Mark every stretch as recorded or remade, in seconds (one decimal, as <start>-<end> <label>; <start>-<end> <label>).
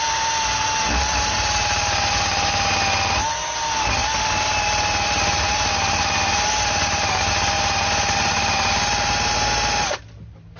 0.0-10.6 recorded